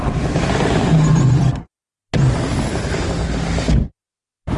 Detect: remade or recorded recorded